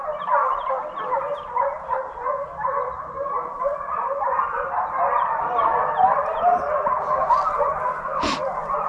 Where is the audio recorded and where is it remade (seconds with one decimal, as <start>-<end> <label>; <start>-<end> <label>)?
0.0-8.9 recorded